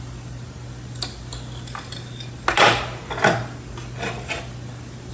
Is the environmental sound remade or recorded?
recorded